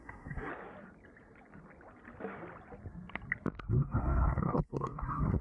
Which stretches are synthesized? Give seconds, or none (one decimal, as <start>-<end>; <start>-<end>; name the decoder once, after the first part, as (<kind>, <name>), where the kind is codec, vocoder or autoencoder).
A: 0.0-0.5 (codec, SNAC); 3.7-5.4